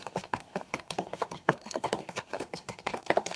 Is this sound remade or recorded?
remade